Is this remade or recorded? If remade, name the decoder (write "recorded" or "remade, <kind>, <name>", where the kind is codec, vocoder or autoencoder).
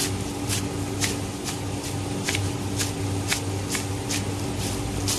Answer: recorded